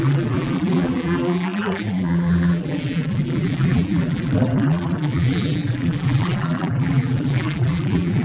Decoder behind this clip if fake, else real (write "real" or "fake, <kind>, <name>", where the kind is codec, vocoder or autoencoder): fake, vocoder, BigVGAN v2